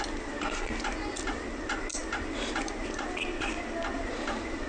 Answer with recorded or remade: recorded